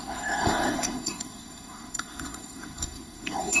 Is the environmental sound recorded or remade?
remade